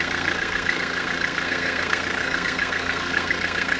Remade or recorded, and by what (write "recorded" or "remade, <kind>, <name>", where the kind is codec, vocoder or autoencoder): remade, codec, SNAC